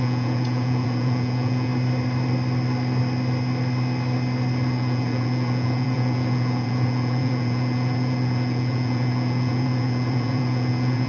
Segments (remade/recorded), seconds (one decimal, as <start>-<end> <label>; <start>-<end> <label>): 0.0-1.7 remade; 1.7-4.7 recorded; 4.7-11.1 remade

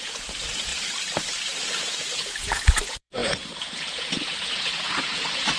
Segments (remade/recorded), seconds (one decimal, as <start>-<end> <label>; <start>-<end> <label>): 0.0-0.7 remade; 0.7-1.8 recorded; 1.8-5.6 remade

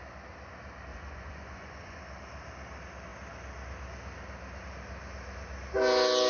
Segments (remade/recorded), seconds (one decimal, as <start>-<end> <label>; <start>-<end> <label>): 0.0-0.9 recorded; 0.9-2.0 remade; 2.0-6.3 recorded

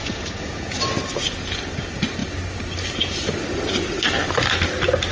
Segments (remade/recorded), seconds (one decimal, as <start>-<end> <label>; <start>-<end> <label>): 0.0-0.8 remade; 0.8-5.1 recorded

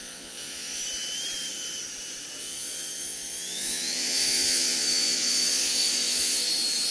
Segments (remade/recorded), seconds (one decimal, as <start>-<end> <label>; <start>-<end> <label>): 0.0-0.8 remade; 0.8-2.4 recorded; 2.4-6.5 remade; 6.5-6.9 recorded

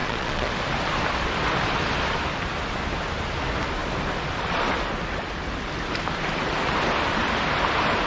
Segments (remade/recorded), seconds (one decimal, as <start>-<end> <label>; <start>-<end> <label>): 0.0-0.5 remade; 0.5-8.1 recorded

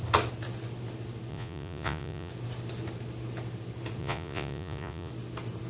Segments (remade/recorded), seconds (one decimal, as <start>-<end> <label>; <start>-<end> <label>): 0.0-1.3 recorded; 1.3-2.3 remade; 2.3-4.0 recorded; 4.0-5.1 remade; 5.1-5.7 recorded

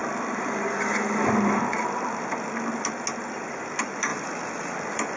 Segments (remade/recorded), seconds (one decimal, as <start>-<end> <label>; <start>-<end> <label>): 0.0-5.2 recorded